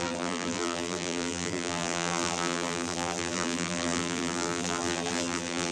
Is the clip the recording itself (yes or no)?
no